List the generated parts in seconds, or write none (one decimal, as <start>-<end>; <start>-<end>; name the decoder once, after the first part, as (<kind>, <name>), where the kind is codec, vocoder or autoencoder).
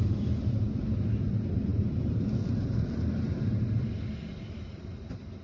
none